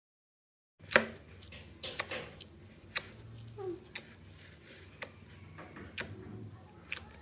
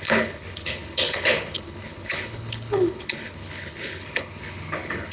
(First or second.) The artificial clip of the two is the second